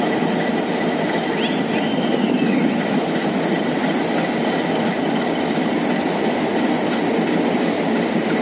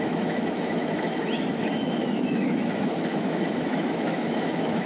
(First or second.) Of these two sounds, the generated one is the second